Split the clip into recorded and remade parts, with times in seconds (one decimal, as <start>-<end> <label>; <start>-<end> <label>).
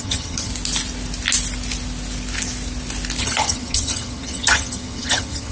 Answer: 0.0-0.5 remade; 0.5-3.2 recorded; 3.2-5.5 remade